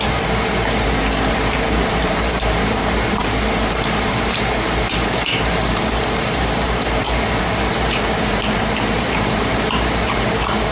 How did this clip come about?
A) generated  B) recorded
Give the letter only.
A